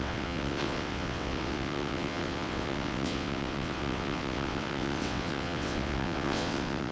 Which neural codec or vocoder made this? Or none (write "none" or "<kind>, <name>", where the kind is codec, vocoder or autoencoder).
vocoder, WaveNeXt